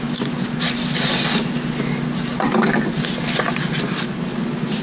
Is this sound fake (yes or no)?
no